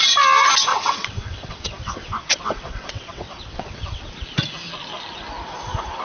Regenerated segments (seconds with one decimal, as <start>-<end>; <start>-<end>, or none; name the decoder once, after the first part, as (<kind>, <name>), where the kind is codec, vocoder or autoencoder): 0.7-4.1 (vocoder, WaveNeXt)